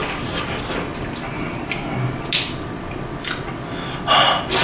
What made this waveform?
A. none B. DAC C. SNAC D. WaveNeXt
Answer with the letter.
A